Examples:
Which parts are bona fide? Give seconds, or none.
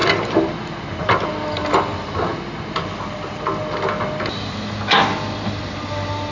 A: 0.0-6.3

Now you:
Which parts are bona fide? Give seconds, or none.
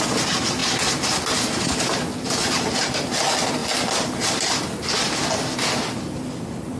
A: 0.0-6.8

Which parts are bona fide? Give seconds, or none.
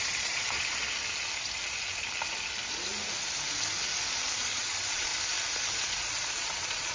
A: 0.8-4.4; 5.1-5.7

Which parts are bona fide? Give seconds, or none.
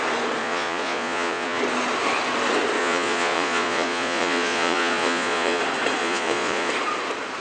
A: 0.0-0.4; 1.6-2.8; 5.6-6.0; 6.7-7.4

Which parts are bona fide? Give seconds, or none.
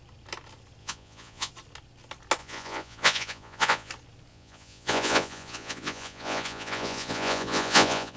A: 0.0-0.8; 1.5-2.4; 3.9-4.3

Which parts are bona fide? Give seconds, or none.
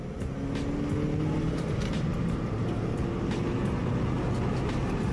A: 0.0-5.1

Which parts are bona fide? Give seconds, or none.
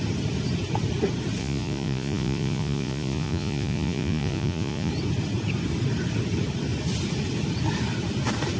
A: 0.0-1.4; 4.9-8.6